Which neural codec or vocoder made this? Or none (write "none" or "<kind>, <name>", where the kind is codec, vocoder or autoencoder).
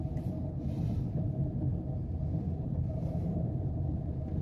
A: vocoder, BigVGAN v2